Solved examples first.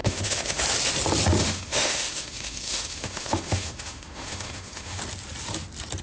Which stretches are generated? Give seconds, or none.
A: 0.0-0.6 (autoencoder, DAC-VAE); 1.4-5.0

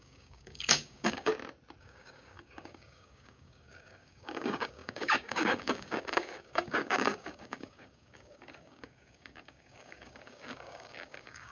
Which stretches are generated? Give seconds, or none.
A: 0.0-1.3 (codec, DAC); 1.8-11.5

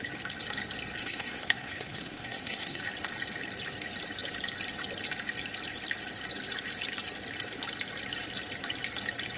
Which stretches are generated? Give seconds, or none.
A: 1.0-2.8 (codec, SNAC)